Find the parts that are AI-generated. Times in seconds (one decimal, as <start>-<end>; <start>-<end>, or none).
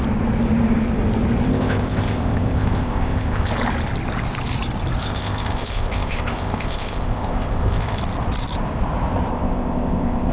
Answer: 1.5-3.5; 5.0-8.0; 9.3-10.3